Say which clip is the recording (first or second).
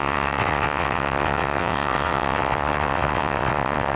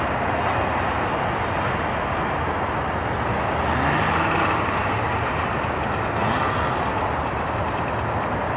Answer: second